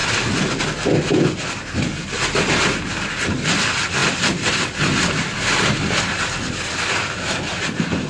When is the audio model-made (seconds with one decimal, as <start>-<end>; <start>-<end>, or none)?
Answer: none